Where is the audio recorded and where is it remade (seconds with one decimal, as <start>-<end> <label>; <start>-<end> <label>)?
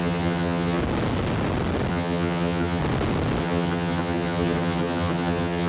0.0-0.8 remade; 0.8-1.9 recorded; 1.9-2.8 remade; 2.8-3.4 recorded; 3.4-5.7 remade